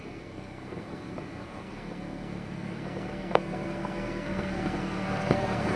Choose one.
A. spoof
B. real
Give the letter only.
A